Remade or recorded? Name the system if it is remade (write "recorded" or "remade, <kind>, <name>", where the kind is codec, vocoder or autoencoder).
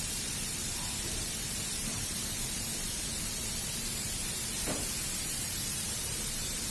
remade, vocoder, BigVGAN v2